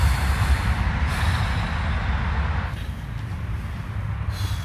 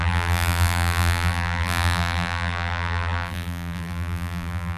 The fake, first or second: second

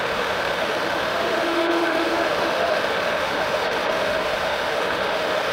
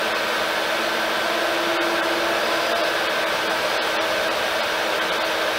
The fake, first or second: first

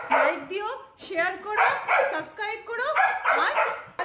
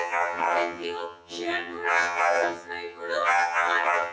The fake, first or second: second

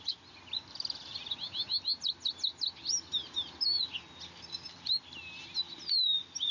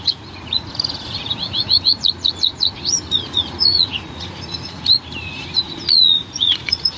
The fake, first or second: second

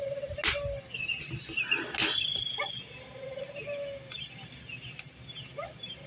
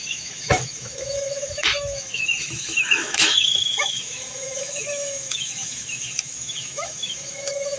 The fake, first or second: second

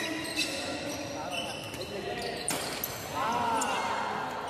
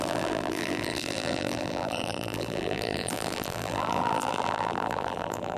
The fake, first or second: second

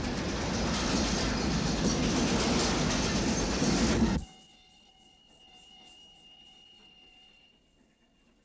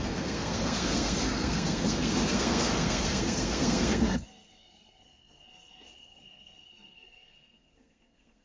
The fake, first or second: second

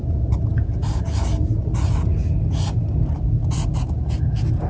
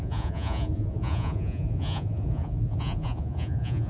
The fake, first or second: second